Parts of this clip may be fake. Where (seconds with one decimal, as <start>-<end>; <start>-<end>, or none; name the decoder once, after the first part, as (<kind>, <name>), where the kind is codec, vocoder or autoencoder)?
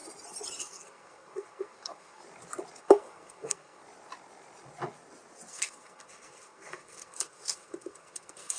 0.6-2.2 (codec, SNAC); 2.8-3.8; 5.5-8.6